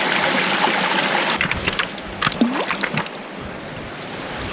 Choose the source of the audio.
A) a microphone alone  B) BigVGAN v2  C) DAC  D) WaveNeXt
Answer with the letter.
A